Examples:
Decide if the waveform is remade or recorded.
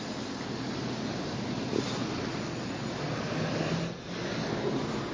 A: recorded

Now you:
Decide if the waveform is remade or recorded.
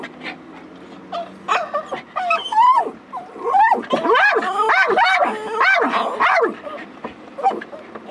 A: recorded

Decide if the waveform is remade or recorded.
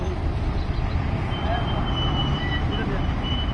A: remade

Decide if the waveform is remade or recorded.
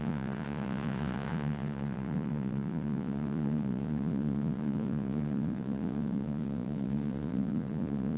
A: remade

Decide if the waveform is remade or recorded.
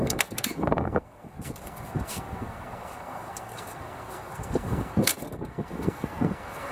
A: remade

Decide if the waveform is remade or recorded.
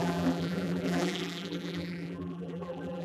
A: remade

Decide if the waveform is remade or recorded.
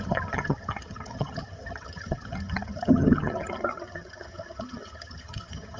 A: remade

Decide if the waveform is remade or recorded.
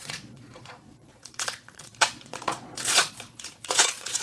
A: remade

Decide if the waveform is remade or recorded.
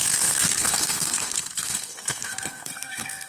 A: remade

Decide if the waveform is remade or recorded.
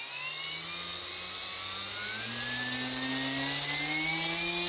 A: recorded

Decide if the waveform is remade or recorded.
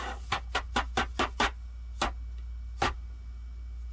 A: recorded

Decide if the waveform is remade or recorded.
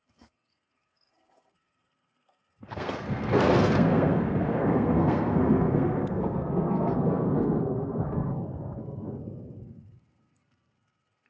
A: remade